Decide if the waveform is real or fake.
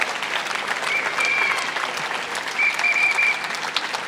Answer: real